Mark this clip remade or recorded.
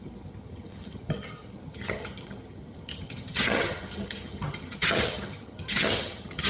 remade